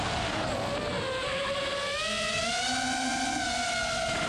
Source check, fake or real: real